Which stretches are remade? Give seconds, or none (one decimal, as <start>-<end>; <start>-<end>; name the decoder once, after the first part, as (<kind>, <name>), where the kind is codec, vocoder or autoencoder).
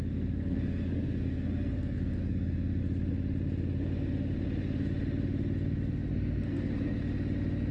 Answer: 0.0-2.8 (codec, SNAC); 6.1-7.0